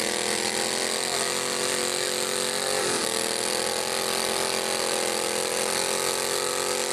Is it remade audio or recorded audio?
recorded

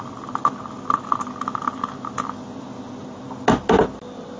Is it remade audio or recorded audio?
recorded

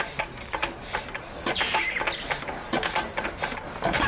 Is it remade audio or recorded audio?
recorded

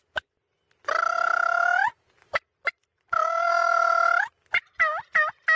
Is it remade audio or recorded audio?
recorded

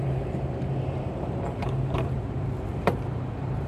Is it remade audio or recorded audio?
remade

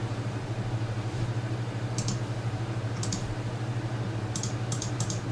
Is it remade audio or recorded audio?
remade